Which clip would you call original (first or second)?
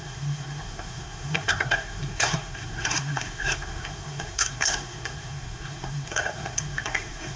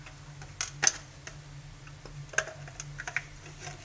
second